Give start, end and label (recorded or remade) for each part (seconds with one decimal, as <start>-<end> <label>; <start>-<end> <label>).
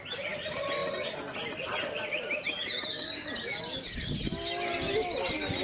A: 0.0-5.6 recorded